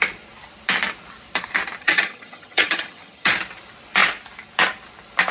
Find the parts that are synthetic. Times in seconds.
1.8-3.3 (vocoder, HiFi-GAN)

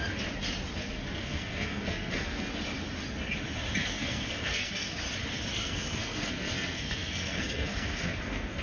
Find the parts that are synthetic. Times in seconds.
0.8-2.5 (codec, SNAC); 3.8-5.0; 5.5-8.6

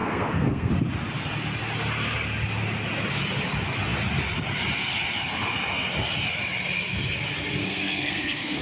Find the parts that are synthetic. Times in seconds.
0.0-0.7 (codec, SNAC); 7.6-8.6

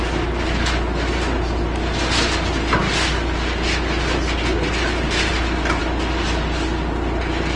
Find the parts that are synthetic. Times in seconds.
none